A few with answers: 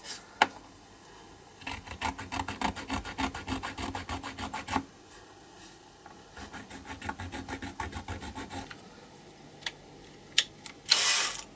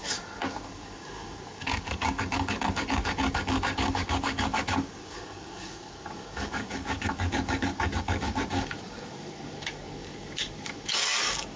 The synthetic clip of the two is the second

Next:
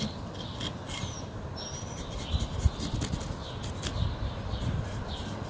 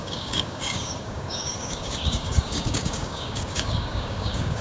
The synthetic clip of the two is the second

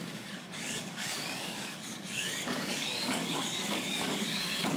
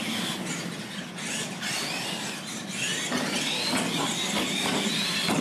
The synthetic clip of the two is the first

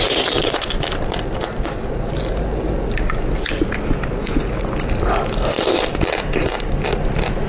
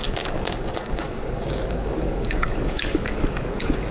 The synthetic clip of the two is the second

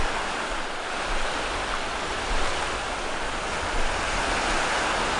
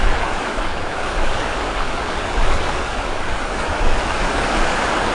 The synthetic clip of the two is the second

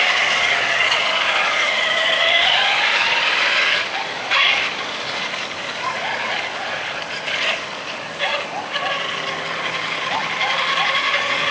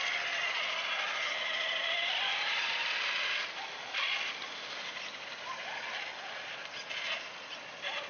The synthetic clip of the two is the first